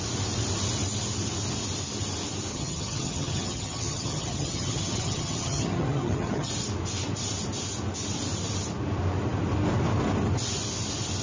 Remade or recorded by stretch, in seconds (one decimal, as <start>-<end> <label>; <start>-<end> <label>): 0.0-2.5 recorded; 2.5-6.5 remade; 6.5-11.2 recorded